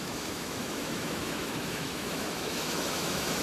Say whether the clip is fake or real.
fake